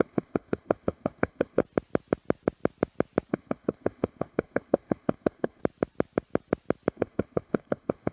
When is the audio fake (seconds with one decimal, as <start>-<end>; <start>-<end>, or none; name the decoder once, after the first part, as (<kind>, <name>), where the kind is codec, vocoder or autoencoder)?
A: 0.0-1.6 (codec, SNAC); 3.3-5.6; 6.9-8.1